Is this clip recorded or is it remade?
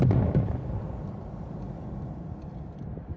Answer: remade